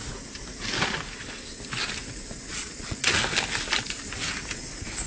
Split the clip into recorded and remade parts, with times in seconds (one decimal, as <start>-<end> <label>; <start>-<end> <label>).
0.0-2.5 recorded; 2.5-3.1 remade; 3.1-5.1 recorded

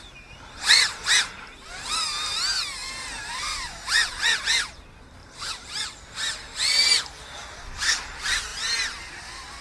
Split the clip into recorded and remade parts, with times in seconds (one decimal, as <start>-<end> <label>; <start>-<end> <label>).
0.0-5.2 recorded; 5.2-6.1 remade; 6.1-8.5 recorded; 8.5-9.0 remade; 9.0-9.6 recorded

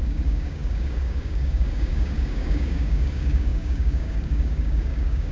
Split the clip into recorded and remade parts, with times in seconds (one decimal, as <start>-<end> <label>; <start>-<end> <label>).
0.0-5.3 remade

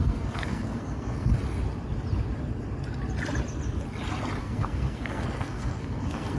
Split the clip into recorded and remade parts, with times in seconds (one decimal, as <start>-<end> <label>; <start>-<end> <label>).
0.0-1.3 remade; 1.3-4.4 recorded; 4.4-6.4 remade

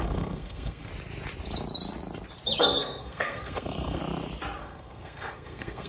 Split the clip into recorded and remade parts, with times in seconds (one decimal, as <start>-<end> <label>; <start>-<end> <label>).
0.0-0.9 remade; 0.9-2.6 recorded; 2.6-4.0 remade; 4.0-4.6 recorded; 4.6-5.9 remade

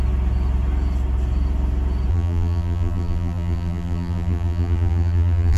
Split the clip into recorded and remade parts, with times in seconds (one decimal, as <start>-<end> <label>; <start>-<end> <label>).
0.0-2.1 recorded; 2.1-5.6 remade

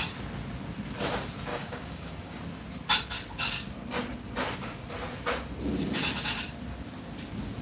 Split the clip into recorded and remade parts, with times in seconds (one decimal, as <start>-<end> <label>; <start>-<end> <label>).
0.0-1.5 recorded; 1.5-2.4 remade; 2.4-7.6 recorded